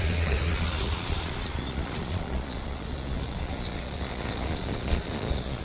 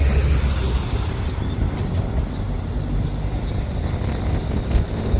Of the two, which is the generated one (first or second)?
first